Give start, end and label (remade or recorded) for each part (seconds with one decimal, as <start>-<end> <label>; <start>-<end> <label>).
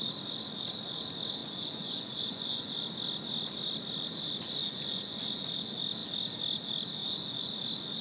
0.0-1.4 recorded; 1.4-2.7 remade; 2.7-4.6 recorded; 4.6-5.4 remade; 5.4-7.0 recorded; 7.0-7.5 remade; 7.5-8.0 recorded